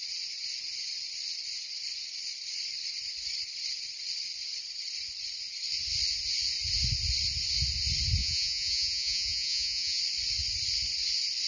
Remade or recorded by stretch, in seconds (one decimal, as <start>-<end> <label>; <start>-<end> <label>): 0.0-8.2 recorded; 8.2-10.0 remade; 10.0-11.5 recorded

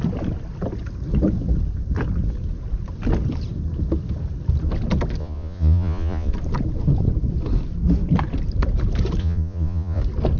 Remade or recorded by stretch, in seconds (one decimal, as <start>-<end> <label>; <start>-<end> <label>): 0.0-5.2 recorded; 5.2-6.3 remade; 6.3-9.2 recorded; 9.2-10.0 remade; 10.0-10.4 recorded

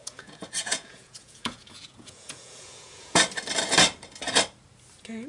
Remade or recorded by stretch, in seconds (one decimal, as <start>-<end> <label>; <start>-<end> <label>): 0.0-3.2 remade; 3.2-5.3 recorded

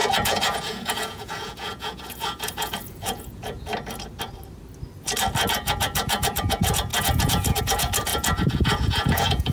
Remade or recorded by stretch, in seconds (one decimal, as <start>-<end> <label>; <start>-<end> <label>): 0.0-3.7 remade; 3.7-5.5 recorded; 5.5-9.5 remade

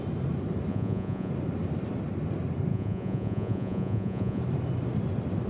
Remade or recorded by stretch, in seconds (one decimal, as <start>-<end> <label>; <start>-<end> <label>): 0.0-0.7 recorded; 0.7-1.3 remade; 1.3-2.7 recorded; 2.7-4.4 remade; 4.4-5.5 recorded